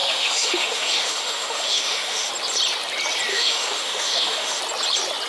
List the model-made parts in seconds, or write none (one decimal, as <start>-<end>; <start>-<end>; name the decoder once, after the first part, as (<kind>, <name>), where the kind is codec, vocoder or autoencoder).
0.0-2.3 (autoencoder, DAC-VAE); 3.3-4.6